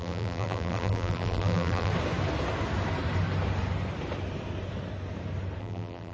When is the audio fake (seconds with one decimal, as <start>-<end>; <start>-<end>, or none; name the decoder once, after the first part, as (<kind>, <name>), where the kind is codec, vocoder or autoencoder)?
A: 0.0-1.9 (vocoder, BigVGAN v2); 5.6-6.1